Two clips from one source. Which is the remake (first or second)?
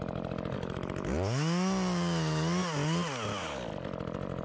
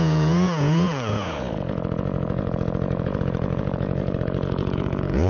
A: second